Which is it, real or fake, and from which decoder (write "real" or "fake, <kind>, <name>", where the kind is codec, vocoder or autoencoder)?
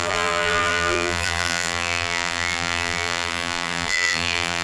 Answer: fake, vocoder, BigVGAN v2